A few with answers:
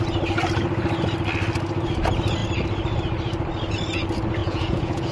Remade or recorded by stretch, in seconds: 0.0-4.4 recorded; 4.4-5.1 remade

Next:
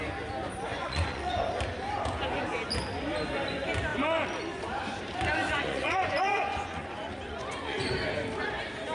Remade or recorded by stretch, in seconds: 0.0-0.7 recorded; 0.7-1.5 remade; 1.5-5.4 recorded; 5.4-7.9 remade; 7.9-8.9 recorded

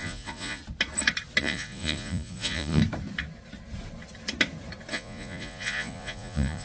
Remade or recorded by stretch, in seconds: 0.0-0.6 remade; 0.6-1.4 recorded; 1.4-2.8 remade; 2.8-4.9 recorded; 4.9-6.6 remade

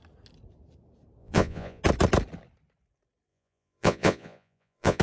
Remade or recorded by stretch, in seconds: 0.0-1.2 recorded; 1.2-1.8 remade; 1.8-3.3 recorded; 3.3-5.0 remade

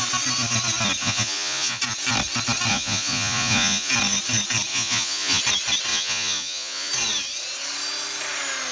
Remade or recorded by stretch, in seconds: 0.0-1.0 recorded; 1.0-1.8 remade; 1.8-2.7 recorded; 2.7-3.9 remade; 3.9-4.7 recorded; 4.7-5.4 remade; 5.4-5.9 recorded; 5.9-6.9 remade; 6.9-8.7 recorded

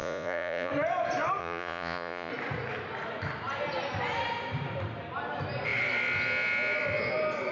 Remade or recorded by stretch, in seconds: 0.0-0.7 remade; 0.7-1.4 recorded; 1.4-2.3 remade; 2.3-7.5 recorded

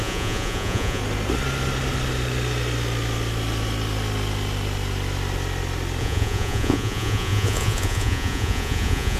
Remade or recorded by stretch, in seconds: 0.0-1.0 remade; 1.0-6.0 recorded; 6.0-9.2 remade